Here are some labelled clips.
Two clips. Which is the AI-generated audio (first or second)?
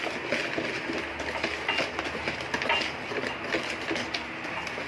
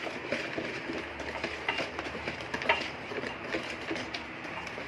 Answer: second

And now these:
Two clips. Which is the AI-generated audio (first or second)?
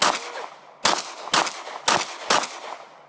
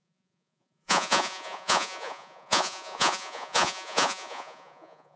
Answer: second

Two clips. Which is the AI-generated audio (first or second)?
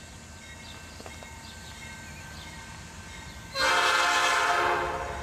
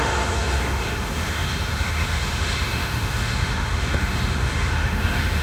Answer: second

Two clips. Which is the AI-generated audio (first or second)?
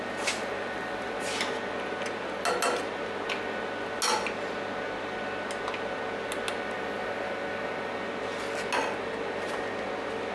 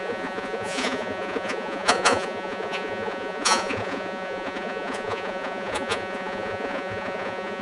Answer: second